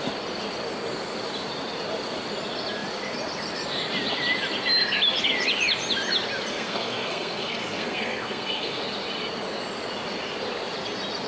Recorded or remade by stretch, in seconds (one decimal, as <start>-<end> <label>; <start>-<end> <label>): 0.0-6.5 recorded; 6.5-8.8 remade; 8.8-11.3 recorded